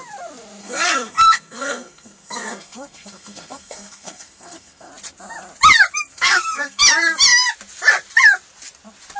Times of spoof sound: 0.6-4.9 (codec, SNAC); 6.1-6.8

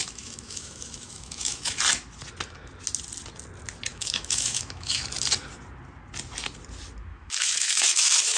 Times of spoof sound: 0.0-1.8 (autoencoder, DAC-VAE); 3.9-5.0; 7.1-8.4

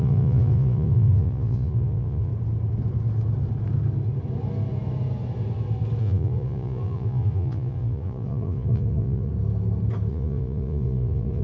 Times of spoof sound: 0.0-2.3 (vocoder, Vocos); 6.0-9.3; 10.1-11.4

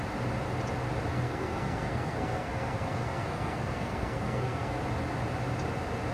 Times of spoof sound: 1.1-4.8 (codec, SNAC)

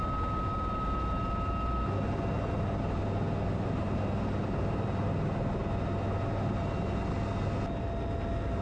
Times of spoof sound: none

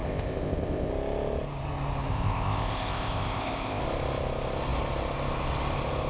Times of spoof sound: 0.0-0.9 (codec, ZipCodec); 2.1-3.8